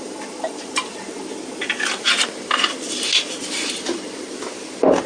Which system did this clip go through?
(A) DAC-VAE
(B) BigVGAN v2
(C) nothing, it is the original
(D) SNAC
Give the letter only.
C